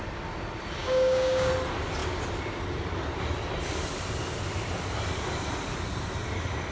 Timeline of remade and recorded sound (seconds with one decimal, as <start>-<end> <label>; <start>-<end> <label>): 0.0-0.8 recorded; 0.8-1.5 remade; 1.5-6.7 recorded